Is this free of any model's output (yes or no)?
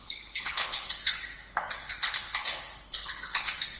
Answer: no